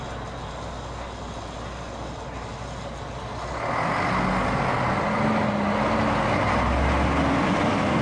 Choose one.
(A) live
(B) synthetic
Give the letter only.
A